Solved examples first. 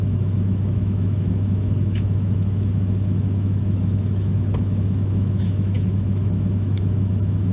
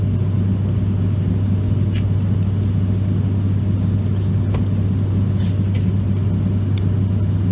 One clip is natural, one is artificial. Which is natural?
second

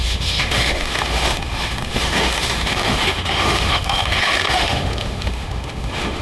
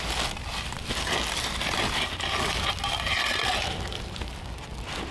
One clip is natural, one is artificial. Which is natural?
second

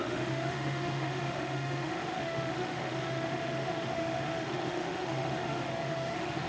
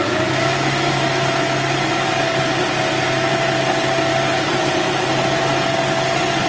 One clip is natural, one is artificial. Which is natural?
second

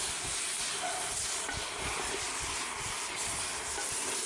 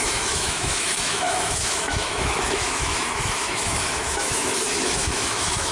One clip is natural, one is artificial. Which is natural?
first